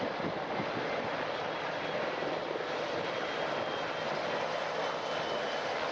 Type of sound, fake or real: real